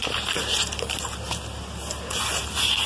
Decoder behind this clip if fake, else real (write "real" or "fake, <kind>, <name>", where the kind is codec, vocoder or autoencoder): real